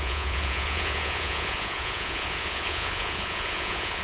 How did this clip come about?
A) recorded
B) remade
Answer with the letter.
B